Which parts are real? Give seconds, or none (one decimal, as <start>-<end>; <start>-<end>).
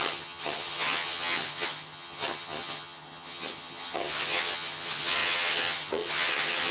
none